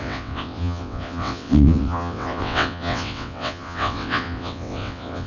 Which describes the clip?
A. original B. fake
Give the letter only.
B